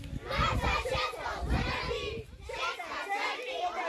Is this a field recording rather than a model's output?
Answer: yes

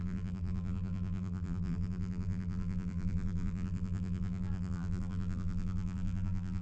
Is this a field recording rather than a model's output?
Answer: no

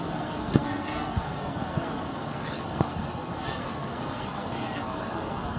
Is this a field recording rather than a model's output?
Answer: no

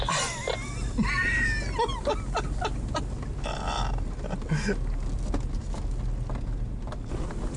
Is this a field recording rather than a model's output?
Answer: yes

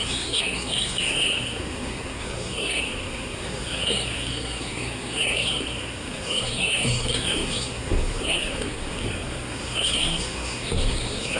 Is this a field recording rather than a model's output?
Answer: no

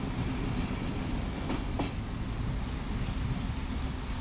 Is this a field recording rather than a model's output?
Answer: yes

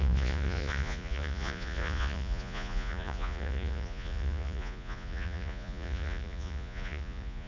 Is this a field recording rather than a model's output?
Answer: no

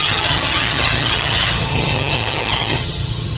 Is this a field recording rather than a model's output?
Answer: no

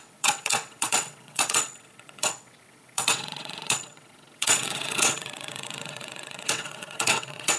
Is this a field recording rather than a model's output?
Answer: no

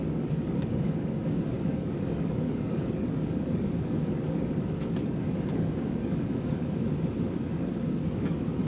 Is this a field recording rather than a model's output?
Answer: no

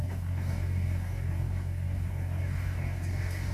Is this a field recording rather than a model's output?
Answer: no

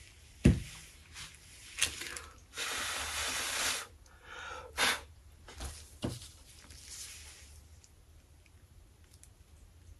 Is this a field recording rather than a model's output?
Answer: yes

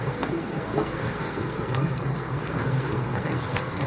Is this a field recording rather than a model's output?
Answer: no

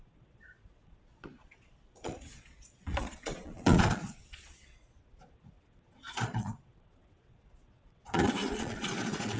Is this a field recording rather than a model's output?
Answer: no